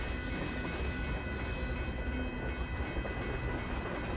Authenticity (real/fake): real